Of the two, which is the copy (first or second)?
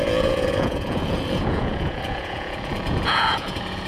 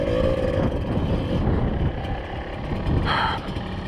first